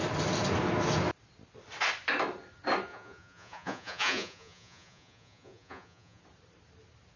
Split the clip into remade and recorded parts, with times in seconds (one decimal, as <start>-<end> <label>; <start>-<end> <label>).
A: 0.0-2.9 recorded; 2.9-6.2 remade; 6.2-7.2 recorded